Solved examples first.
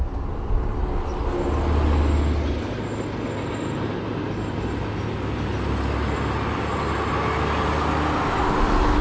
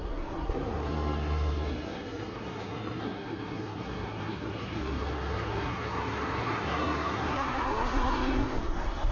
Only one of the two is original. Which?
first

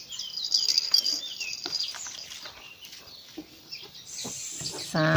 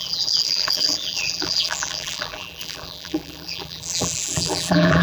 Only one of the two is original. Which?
first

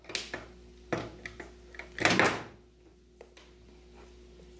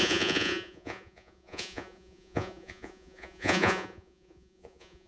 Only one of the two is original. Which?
first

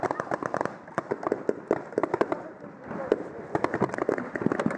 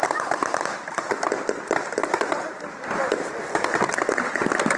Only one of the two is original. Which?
first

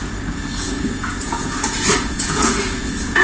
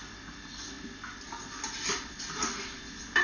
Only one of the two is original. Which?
second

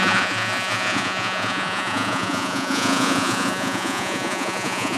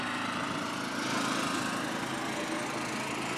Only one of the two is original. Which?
second